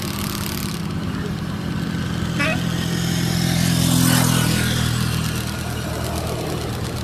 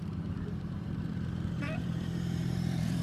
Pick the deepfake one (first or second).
second